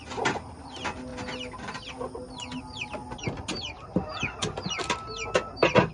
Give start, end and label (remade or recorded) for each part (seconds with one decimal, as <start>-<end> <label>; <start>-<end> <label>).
0.0-5.9 recorded